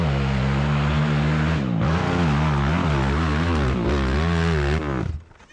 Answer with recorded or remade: recorded